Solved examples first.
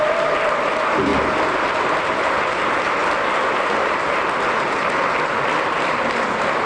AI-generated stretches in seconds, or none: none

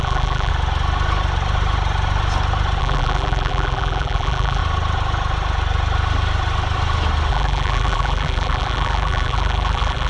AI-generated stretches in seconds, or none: 0.0-0.5 (vocoder, BigVGAN v2); 2.8-4.6; 7.3-10.1